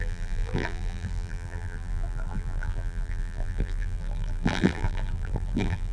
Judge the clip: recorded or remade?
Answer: remade